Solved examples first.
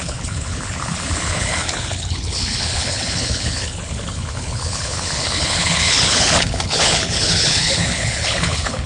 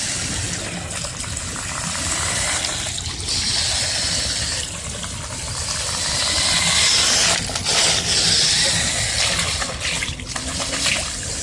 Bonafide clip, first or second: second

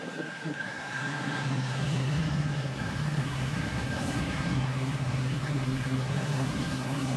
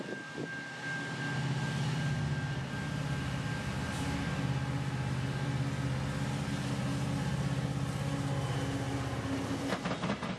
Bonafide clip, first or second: second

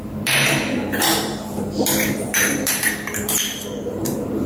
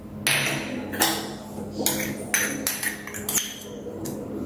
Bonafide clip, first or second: second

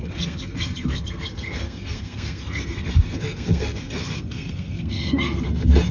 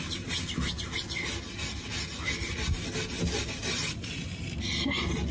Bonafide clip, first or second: second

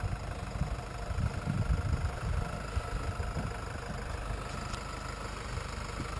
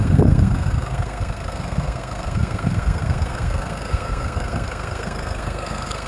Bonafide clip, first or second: first